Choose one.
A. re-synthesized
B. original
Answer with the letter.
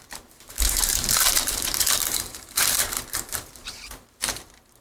A